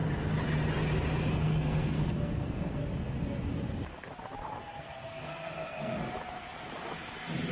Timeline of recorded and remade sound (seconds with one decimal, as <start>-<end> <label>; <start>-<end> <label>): 0.0-1.3 recorded; 1.3-2.8 remade; 2.8-4.6 recorded; 4.6-5.9 remade; 5.9-7.5 recorded